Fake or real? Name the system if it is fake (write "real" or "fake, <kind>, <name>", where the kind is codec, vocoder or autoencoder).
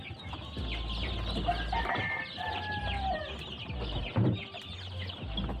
real